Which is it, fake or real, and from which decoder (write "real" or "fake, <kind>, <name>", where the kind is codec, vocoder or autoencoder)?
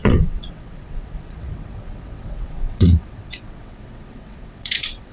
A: fake, vocoder, WaveNeXt